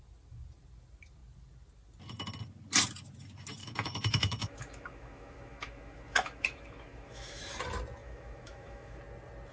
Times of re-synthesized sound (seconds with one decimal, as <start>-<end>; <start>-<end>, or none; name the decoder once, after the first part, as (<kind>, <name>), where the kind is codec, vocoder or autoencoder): 3.6-7.5 (autoencoder, DAC-VAE); 8.0-9.0